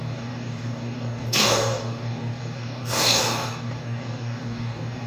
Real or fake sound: fake